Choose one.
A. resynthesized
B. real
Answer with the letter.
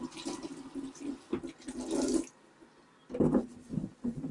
B